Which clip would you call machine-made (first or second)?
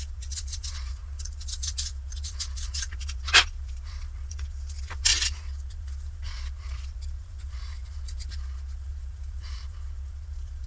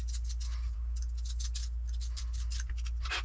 first